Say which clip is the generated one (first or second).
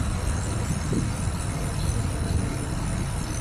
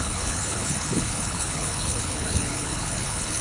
second